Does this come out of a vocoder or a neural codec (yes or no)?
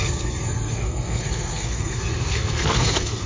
yes